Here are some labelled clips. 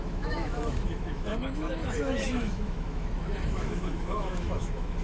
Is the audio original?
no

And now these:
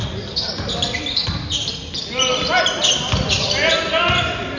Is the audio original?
yes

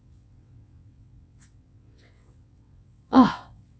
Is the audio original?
no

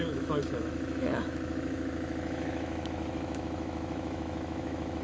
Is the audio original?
no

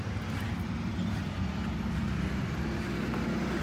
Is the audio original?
yes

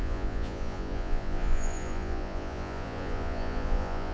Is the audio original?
no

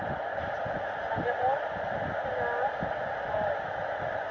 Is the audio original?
yes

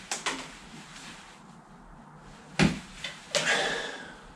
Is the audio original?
yes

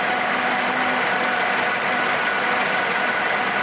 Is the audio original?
yes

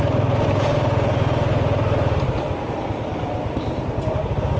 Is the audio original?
yes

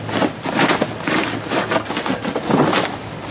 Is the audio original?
yes